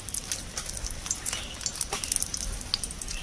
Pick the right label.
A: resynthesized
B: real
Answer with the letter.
B